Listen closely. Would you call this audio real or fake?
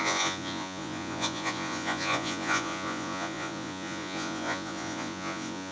fake